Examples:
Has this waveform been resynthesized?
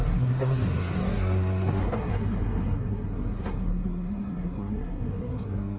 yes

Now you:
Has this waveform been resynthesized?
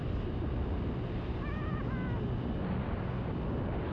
no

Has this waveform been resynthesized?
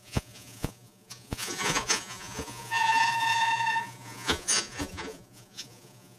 yes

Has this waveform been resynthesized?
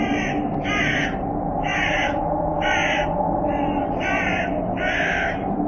no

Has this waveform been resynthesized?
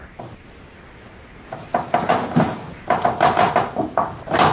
no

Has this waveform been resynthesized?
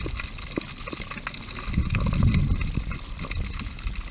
no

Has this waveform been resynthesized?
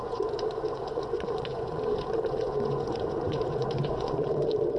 yes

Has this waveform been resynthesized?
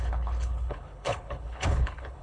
yes